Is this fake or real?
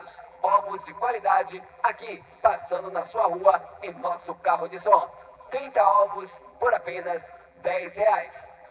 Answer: fake